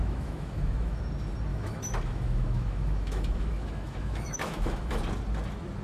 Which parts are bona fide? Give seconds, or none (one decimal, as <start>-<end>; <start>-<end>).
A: 1.0-1.5; 5.0-5.8